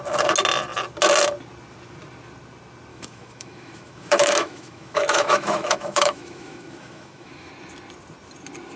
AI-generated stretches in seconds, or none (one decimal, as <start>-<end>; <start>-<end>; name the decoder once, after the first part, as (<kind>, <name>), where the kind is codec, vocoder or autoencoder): 2.9-7.5 (autoencoder, DAC-VAE)